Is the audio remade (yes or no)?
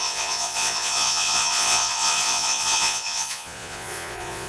yes